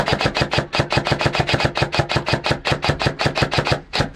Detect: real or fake real